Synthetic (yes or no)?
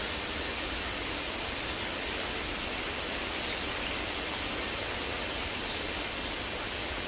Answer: no